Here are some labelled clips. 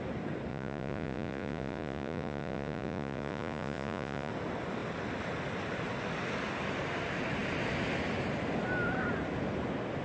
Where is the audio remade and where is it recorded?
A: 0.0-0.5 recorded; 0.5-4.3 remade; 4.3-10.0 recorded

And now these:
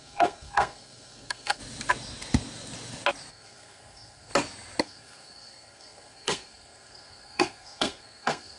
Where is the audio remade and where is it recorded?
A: 0.0-1.6 remade; 1.6-3.3 recorded; 3.3-4.3 remade; 4.3-4.8 recorded; 4.8-8.6 remade

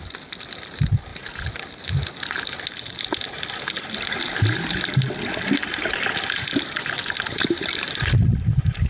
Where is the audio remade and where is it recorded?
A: 0.0-8.9 recorded

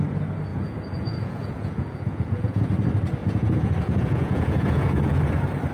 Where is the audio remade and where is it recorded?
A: 0.0-0.5 recorded; 0.5-2.6 remade; 2.6-3.2 recorded; 3.2-5.3 remade; 5.3-5.7 recorded

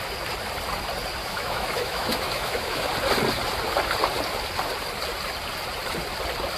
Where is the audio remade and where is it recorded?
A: 0.0-1.2 recorded; 1.2-2.9 remade; 2.9-6.6 recorded

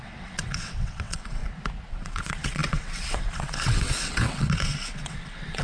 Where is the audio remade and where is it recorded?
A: 0.0-1.4 remade; 1.4-1.9 recorded; 1.9-5.6 remade

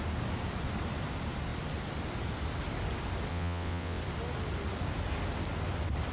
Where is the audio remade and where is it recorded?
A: 0.0-3.3 recorded; 3.3-4.0 remade; 4.0-6.1 recorded

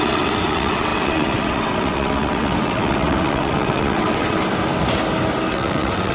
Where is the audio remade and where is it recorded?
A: 0.0-4.4 remade; 4.4-5.5 recorded; 5.5-6.1 remade